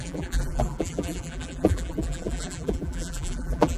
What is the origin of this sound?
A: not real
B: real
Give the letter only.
A